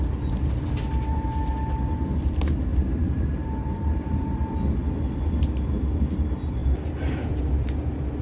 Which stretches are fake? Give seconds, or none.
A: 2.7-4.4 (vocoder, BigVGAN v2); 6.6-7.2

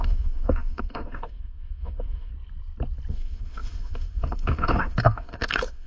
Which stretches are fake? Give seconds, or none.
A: 0.0-2.3 (autoencoder, DAC-VAE); 3.1-5.9

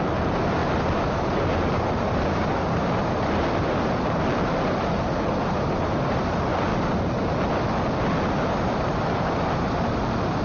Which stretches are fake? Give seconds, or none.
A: 0.0-6.7 (vocoder, BigVGAN v2); 8.4-10.4

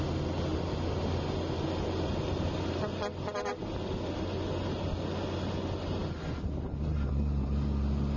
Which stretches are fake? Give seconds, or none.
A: none

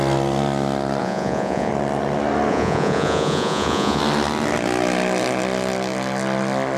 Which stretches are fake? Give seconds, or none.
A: 1.0-1.7 (vocoder, Vocos); 2.5-4.0